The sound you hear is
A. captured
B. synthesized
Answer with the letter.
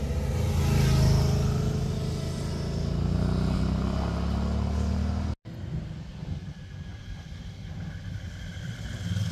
A